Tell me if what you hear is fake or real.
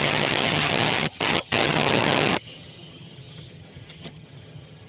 fake